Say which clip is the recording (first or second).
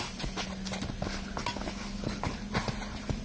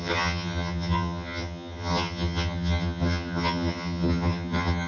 first